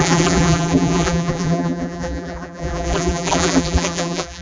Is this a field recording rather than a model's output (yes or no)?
no